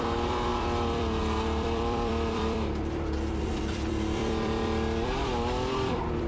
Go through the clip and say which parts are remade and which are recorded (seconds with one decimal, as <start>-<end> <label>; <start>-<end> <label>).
0.0-6.3 remade